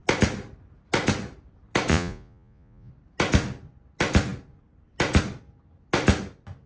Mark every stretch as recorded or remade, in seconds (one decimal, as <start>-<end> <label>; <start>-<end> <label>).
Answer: 0.0-1.9 recorded; 1.9-2.9 remade; 2.9-6.7 recorded